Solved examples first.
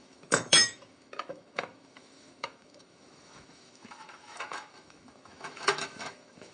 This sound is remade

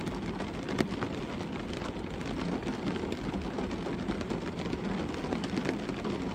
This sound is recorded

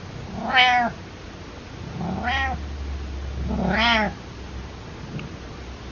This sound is recorded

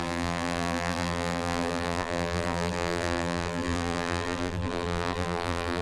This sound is remade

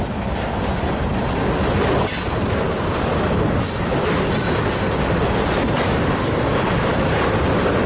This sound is recorded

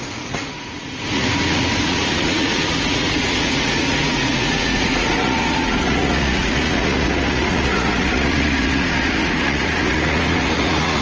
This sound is remade